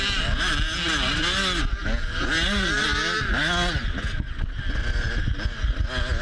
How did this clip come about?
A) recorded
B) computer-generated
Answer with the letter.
A